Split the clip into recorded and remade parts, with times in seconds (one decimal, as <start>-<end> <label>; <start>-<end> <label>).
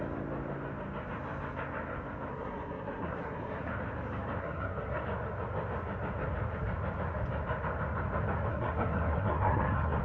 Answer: 0.0-2.3 recorded; 2.3-3.7 remade; 3.7-4.4 recorded; 4.4-5.0 remade; 5.0-8.5 recorded; 8.5-10.0 remade